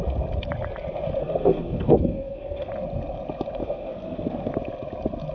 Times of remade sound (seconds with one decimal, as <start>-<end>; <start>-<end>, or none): 1.2-2.7; 3.6-4.5

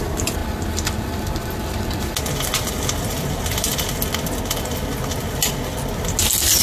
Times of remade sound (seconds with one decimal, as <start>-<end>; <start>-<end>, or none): none

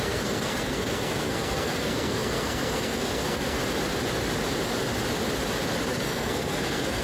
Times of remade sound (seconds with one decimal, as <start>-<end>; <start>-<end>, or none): 0.0-3.6; 5.9-7.0

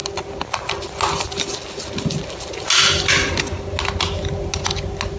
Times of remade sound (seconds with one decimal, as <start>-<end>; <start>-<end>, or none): none

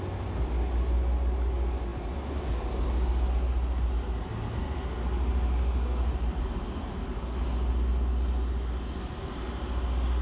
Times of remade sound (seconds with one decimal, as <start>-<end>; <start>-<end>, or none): none

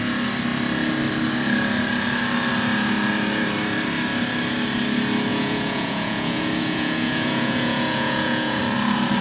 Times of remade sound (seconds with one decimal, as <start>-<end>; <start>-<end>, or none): 5.3-8.6

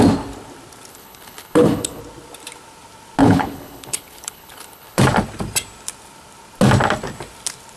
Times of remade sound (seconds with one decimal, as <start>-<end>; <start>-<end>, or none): 0.9-2.0; 3.2-5.0